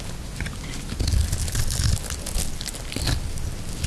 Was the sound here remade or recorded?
recorded